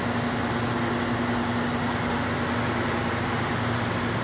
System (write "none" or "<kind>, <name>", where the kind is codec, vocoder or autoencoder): none